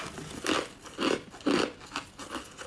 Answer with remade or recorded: recorded